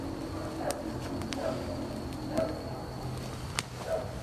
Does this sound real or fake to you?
real